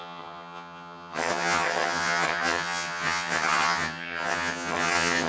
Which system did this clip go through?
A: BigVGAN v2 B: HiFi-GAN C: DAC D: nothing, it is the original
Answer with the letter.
B